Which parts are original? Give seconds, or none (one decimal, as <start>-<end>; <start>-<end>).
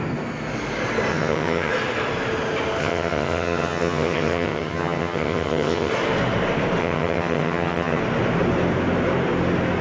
0.0-1.1; 1.7-2.8; 5.9-6.8; 8.0-9.8